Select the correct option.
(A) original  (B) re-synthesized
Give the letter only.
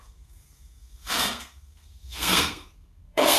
B